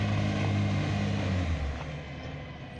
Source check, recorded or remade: recorded